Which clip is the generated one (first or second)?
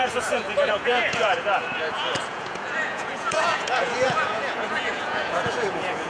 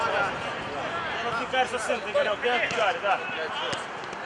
first